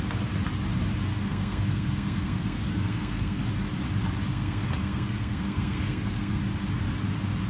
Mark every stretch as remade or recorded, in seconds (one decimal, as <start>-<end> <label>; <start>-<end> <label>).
0.0-1.1 recorded; 1.1-3.4 remade; 3.4-4.3 recorded; 4.3-6.4 remade; 6.4-7.5 recorded